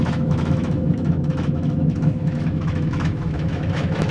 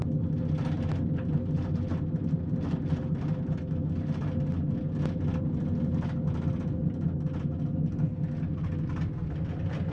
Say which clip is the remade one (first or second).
first